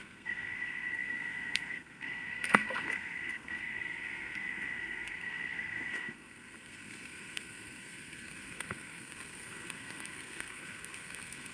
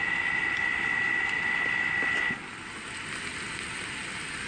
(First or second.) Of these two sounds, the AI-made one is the first